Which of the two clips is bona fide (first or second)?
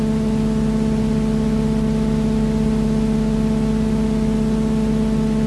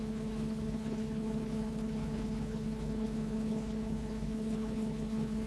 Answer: first